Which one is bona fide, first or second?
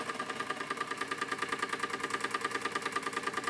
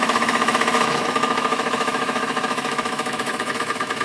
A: first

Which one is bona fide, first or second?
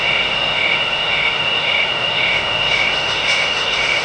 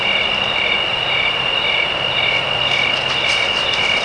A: second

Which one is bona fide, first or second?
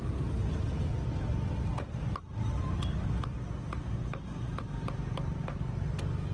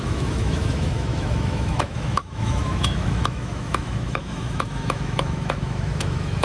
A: first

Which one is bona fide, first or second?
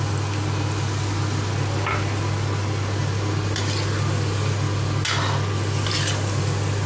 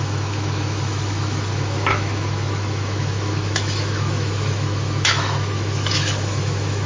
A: first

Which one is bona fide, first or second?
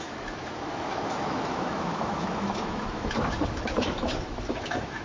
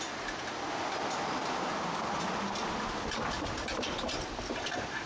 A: second